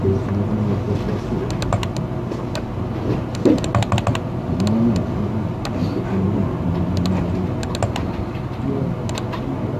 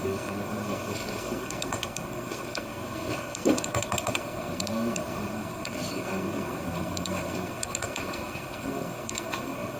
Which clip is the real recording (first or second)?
first